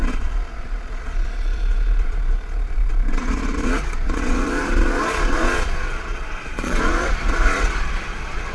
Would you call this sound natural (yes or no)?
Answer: no